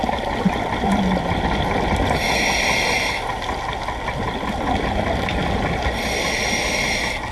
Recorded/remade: recorded